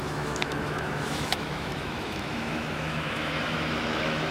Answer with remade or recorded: remade